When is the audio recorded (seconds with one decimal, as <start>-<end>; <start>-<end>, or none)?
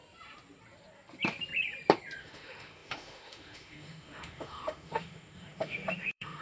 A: 0.0-2.2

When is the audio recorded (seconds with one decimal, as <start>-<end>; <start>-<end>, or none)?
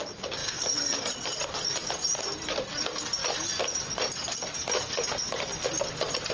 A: 0.0-0.4; 1.0-5.5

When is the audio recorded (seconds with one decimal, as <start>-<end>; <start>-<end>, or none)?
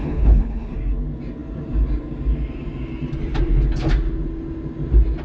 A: 0.7-5.2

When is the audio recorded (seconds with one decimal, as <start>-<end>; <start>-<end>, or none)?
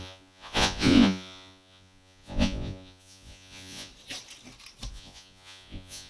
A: 3.9-4.9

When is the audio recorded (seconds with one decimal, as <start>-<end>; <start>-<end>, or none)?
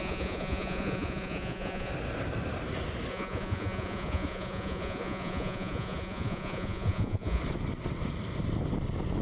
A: 1.9-3.1; 7.4-9.2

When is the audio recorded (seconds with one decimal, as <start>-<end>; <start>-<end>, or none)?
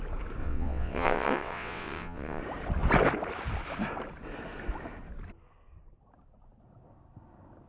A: 0.0-0.4; 2.4-7.7